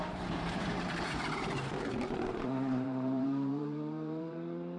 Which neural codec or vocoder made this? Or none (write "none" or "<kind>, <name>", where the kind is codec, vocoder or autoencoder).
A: vocoder, BigVGAN v2